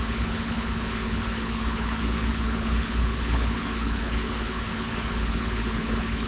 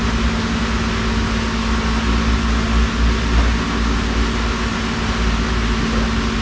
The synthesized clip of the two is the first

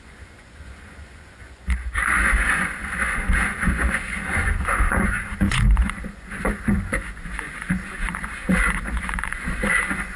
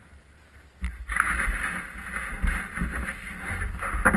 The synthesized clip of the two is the first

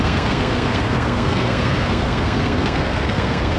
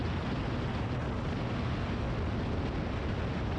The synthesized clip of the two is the first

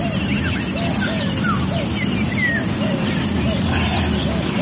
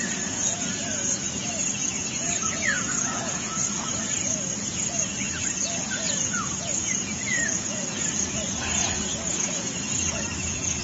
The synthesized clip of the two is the second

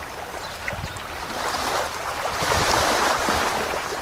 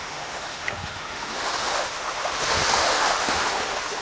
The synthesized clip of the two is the second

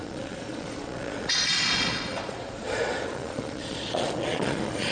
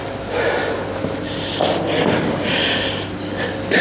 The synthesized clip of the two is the first